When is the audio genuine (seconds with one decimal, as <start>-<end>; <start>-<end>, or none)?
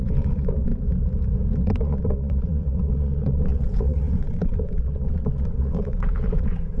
0.7-1.6